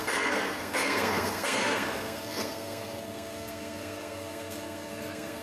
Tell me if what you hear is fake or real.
fake